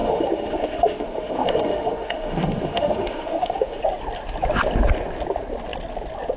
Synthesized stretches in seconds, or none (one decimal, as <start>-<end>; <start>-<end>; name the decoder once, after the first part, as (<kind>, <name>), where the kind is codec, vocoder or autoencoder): 0.0-3.8 (autoencoder, DAC-VAE)